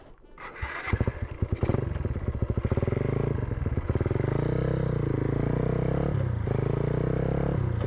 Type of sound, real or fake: real